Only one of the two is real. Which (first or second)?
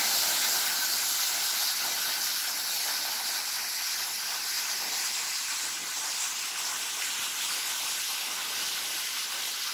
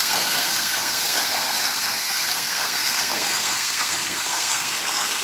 first